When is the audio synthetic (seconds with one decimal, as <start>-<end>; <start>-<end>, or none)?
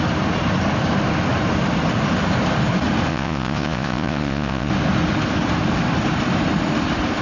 3.1-4.7